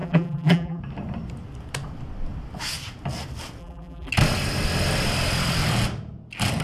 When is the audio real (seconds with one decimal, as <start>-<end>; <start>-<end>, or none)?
0.8-3.6; 4.1-6.6